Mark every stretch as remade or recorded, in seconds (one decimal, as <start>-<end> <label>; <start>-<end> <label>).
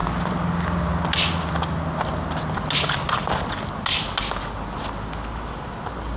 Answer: 0.0-6.2 recorded